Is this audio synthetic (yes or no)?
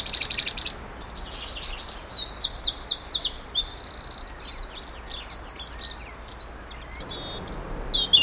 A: no